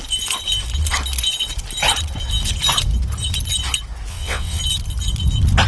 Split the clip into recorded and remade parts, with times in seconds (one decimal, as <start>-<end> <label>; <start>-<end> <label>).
0.0-4.1 recorded; 4.1-4.6 remade; 4.6-5.7 recorded